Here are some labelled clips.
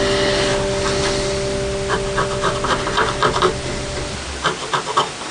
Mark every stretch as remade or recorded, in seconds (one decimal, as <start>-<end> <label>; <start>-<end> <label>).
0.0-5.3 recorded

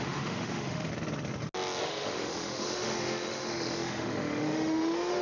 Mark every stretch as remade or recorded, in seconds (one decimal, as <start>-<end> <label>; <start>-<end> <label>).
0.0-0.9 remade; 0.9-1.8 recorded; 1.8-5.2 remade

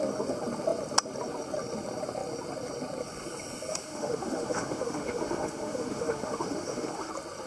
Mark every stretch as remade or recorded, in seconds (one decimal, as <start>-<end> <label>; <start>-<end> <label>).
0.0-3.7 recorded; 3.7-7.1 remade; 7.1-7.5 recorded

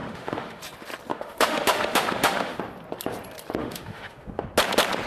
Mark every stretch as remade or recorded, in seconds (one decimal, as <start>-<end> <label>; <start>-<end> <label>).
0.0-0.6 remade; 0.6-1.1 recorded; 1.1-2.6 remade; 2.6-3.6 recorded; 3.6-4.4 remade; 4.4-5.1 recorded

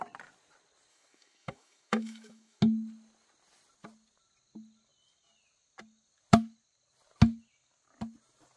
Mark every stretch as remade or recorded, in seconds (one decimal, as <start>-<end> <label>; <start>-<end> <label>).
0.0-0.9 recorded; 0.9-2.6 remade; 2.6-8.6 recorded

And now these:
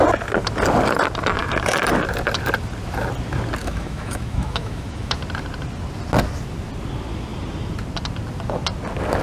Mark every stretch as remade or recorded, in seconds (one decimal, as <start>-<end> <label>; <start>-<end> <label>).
0.0-3.6 recorded; 3.6-5.2 remade; 5.2-9.2 recorded